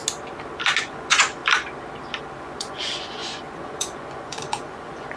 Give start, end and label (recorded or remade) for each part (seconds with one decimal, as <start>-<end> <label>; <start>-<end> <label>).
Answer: 0.0-0.8 recorded; 0.8-1.4 remade; 1.4-2.4 recorded; 2.4-5.2 remade